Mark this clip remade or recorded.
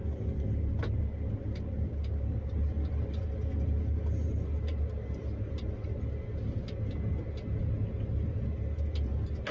recorded